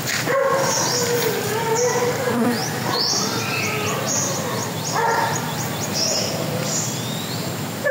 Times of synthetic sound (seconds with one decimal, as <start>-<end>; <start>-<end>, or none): none